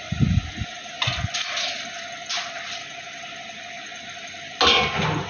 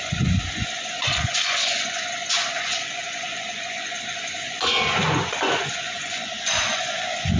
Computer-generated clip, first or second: second